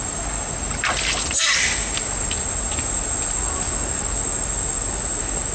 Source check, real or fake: real